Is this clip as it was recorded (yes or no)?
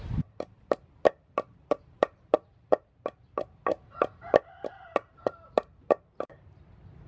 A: no